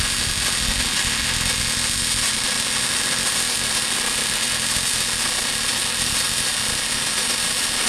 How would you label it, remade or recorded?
recorded